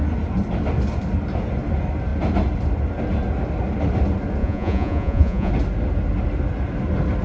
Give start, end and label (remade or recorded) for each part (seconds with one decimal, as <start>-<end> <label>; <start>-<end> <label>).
0.0-4.4 recorded; 4.4-5.5 remade; 5.5-7.2 recorded